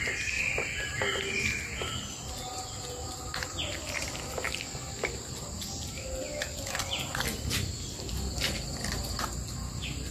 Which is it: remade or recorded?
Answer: recorded